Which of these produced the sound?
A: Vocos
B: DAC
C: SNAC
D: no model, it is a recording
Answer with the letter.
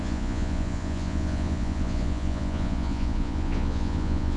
A